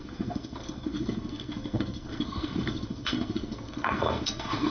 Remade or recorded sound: remade